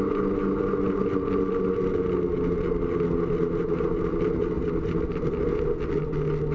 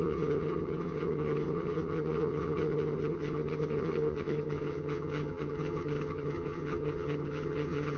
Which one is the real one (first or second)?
first